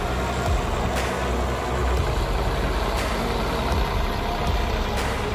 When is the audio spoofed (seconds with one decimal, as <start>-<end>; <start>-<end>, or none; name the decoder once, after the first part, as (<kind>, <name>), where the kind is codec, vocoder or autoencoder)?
none

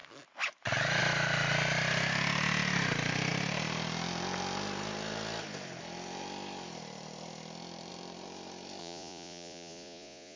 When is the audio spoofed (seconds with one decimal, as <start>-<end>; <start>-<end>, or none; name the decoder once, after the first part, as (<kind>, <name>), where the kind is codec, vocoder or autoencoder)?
8.8-10.4 (vocoder, Vocos)